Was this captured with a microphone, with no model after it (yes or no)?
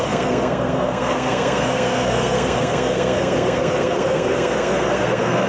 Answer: no